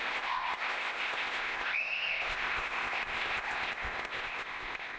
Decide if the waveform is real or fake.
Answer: fake